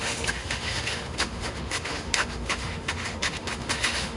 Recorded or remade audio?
remade